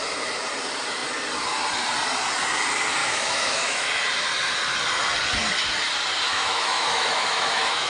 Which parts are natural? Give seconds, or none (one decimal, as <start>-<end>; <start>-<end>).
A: 0.0-3.0; 3.9-6.3

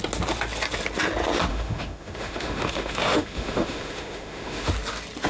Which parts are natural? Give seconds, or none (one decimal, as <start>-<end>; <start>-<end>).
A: 0.0-1.5; 4.7-5.3